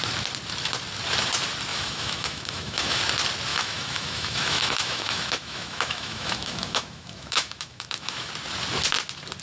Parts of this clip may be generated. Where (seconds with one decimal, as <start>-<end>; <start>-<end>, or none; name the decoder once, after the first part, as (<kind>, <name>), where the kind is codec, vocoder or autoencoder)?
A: 1.7-3.0 (autoencoder, DAC-VAE); 3.5-8.3